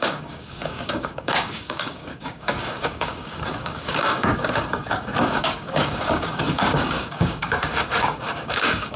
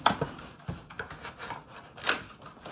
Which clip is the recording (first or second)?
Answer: second